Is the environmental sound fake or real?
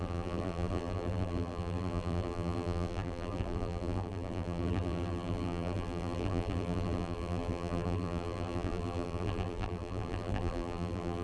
fake